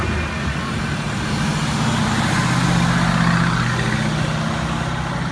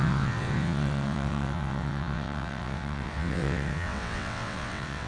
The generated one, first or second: second